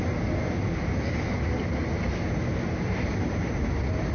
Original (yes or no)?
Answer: yes